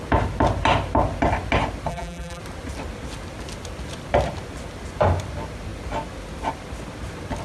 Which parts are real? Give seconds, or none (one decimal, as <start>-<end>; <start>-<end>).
0.0-1.9; 2.4-7.4